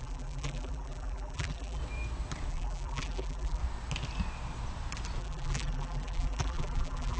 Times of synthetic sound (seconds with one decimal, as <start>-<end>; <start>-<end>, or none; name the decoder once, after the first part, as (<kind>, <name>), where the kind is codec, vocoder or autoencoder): 0.0-1.8 (vocoder, BigVGAN v2); 2.5-3.6; 5.2-7.2